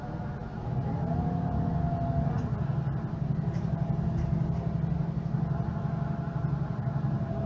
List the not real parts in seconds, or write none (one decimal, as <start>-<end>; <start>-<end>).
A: none

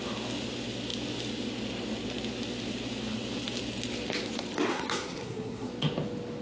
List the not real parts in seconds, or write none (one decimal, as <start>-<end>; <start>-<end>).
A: 4.7-5.7

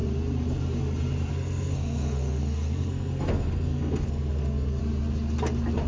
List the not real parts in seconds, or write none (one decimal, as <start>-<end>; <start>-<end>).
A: 1.3-4.8

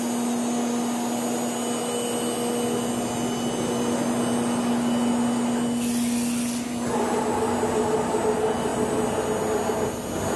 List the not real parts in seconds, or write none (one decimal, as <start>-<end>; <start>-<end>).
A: none

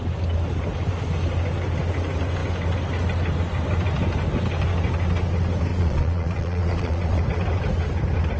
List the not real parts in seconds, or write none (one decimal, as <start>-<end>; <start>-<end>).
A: 5.7-7.2

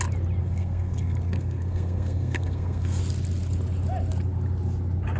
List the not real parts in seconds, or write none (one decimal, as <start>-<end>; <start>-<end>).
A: 0.4-3.0

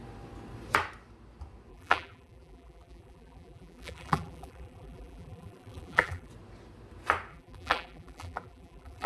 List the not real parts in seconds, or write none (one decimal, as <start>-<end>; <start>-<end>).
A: 1.7-6.3; 7.3-9.1

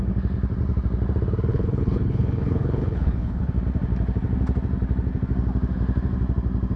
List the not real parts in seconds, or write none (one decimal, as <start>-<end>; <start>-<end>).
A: 1.5-3.5